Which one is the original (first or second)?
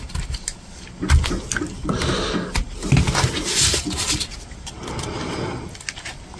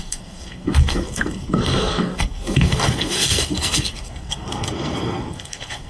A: first